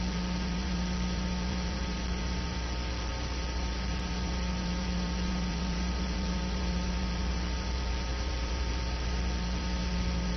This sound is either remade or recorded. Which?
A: remade